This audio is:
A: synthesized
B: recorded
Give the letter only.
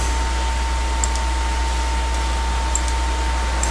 B